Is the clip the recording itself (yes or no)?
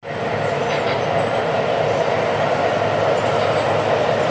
yes